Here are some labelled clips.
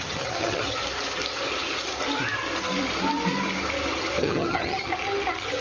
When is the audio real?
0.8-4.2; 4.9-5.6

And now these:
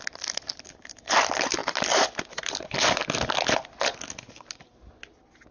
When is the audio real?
0.0-5.5

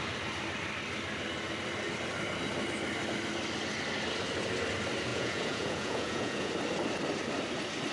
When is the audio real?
0.0-5.1; 6.5-7.9

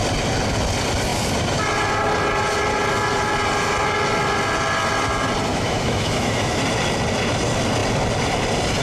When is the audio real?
0.0-5.5; 6.6-8.8

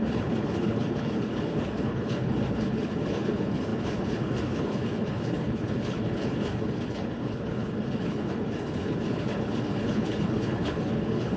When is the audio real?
none

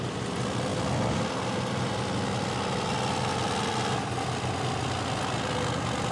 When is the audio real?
0.0-6.1

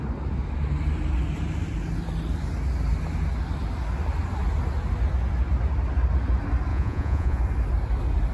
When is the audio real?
0.0-6.7; 7.4-8.3